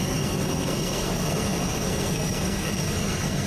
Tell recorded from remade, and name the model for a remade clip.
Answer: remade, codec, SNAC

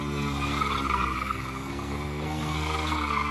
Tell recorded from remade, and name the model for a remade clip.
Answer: remade, codec, SNAC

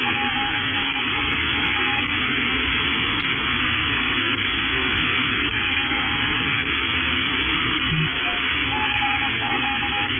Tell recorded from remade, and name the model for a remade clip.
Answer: remade, codec, SNAC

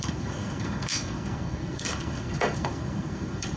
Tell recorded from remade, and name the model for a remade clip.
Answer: remade, codec, SNAC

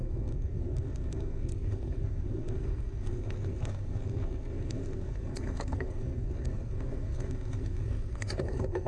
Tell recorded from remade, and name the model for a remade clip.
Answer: remade, codec, SNAC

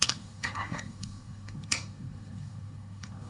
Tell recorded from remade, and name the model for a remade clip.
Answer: remade, codec, SNAC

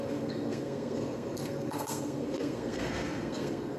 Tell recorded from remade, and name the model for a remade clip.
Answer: remade, codec, SNAC